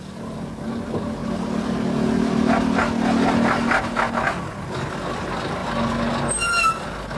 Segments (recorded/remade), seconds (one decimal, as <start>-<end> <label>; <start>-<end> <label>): 0.0-7.2 recorded